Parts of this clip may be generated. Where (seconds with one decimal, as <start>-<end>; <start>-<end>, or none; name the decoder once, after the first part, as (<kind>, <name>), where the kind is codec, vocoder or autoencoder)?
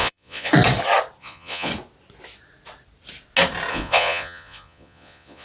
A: 0.0-0.5 (vocoder, Vocos); 1.2-1.7; 3.7-5.4